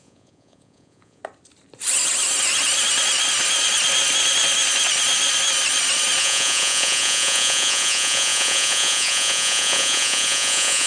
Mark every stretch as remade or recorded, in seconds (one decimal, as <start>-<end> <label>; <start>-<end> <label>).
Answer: 0.0-1.2 remade; 1.2-6.2 recorded; 6.2-10.9 remade